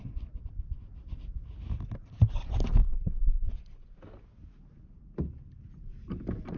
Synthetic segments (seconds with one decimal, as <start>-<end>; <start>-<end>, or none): 2.8-4.0